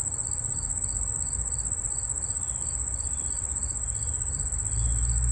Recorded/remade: recorded